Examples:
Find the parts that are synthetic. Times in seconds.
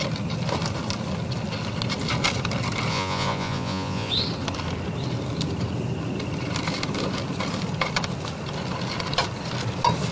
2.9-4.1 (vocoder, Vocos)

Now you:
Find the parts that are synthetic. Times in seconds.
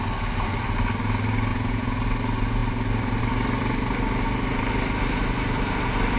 1.5-2.0 (vocoder, Vocos)